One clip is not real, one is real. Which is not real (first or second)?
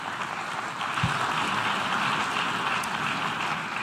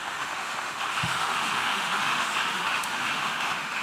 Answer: second